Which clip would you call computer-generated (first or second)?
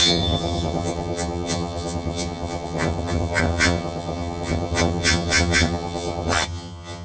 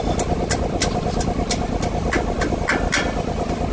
first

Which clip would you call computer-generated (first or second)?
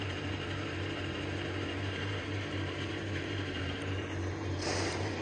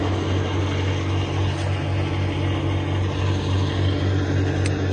first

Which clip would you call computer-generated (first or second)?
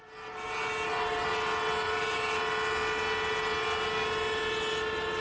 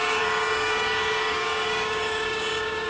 second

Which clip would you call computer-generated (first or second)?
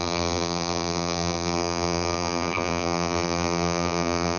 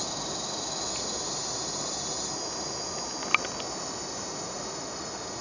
first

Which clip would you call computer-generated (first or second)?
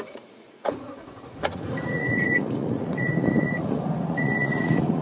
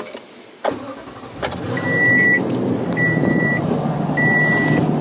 first